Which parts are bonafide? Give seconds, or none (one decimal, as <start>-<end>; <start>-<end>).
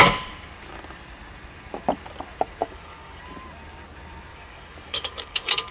0.0-2.6; 3.2-4.3